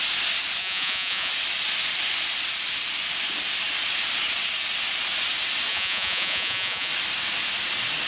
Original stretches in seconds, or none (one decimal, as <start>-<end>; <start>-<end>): 0.0-0.6; 1.3-5.7; 6.9-8.1

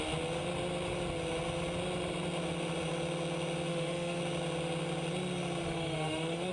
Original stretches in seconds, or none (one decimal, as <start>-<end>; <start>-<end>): 0.0-3.7; 4.2-5.6

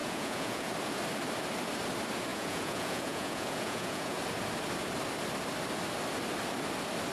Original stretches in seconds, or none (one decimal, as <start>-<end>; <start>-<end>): 0.7-2.3; 4.2-7.1